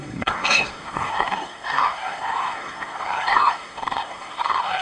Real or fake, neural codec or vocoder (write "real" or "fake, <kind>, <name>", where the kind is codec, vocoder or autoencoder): fake, codec, SNAC